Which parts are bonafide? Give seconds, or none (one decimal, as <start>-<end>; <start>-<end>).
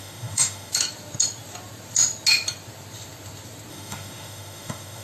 0.7-3.7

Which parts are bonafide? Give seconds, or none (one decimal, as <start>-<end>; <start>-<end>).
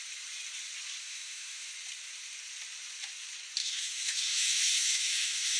0.0-1.0; 1.7-3.6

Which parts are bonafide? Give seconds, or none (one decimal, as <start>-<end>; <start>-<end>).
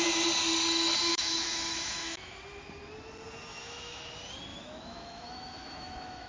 0.0-1.1; 2.4-3.5; 4.1-4.5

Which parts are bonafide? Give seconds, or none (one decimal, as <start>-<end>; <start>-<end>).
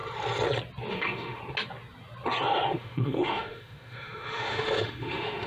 0.0-0.9; 1.4-2.7